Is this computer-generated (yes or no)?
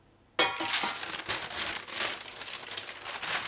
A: no